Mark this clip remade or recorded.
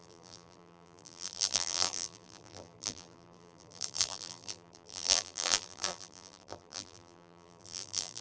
remade